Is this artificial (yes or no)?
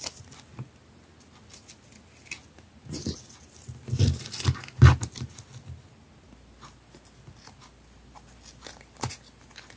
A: no